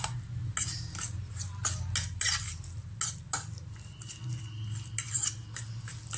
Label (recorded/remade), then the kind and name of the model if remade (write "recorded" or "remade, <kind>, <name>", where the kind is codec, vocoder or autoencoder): recorded